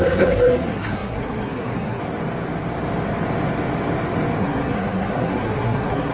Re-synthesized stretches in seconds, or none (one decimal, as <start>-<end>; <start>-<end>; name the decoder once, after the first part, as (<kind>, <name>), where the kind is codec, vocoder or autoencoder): 0.0-2.0 (codec, SNAC); 4.4-6.1